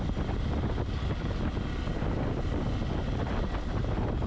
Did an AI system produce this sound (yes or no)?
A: no